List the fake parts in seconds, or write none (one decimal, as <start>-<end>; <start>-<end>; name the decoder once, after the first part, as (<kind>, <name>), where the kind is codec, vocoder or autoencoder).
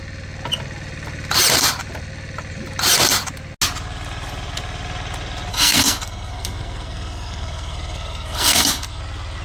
5.5-9.0 (codec, SNAC)